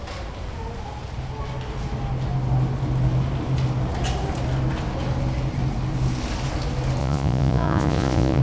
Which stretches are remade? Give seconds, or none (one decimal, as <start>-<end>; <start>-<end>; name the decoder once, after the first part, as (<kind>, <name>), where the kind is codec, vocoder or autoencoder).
7.0-8.4 (vocoder, Vocos)